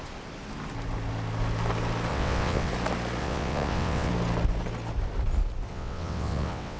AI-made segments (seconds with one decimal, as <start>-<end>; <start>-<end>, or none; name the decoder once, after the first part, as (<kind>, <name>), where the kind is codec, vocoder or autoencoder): 2.1-2.7 (vocoder, WaveNeXt); 3.2-4.1; 5.7-6.8